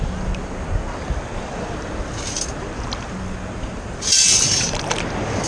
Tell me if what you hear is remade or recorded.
recorded